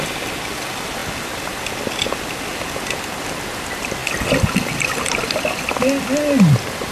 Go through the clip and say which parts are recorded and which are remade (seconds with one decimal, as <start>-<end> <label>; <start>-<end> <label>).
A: 0.0-6.9 recorded